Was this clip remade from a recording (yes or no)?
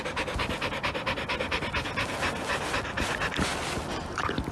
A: no